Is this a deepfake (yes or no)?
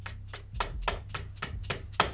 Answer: no